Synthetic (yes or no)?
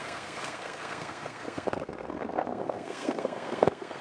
yes